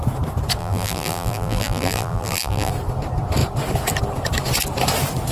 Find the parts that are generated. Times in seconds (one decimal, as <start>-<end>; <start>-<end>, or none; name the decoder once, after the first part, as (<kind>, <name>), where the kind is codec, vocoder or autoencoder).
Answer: 0.6-2.7 (vocoder, BigVGAN v2)